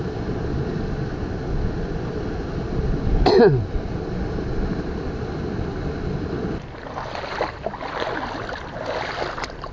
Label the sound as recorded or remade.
recorded